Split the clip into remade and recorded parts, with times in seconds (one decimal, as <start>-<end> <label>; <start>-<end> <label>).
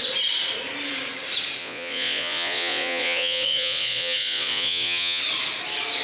0.0-1.6 recorded; 1.6-5.2 remade; 5.2-6.0 recorded